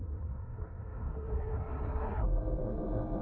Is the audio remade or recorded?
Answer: remade